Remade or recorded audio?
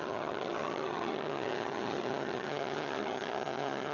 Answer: remade